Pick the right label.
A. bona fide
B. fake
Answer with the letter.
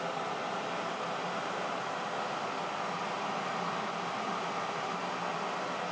A